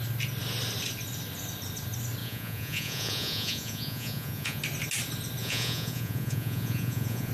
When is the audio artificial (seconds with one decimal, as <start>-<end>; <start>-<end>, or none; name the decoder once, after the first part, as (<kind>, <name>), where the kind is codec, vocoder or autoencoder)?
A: 2.2-4.6 (vocoder, Vocos); 5.4-7.3

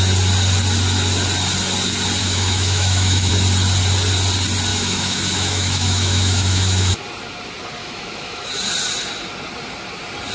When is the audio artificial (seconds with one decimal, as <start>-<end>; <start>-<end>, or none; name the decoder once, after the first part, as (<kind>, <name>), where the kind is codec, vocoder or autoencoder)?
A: 2.2-3.3 (autoencoder, DAC-VAE); 4.7-6.9; 7.8-8.5